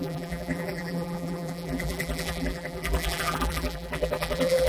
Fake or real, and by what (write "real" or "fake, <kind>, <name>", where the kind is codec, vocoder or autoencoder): fake, vocoder, BigVGAN v2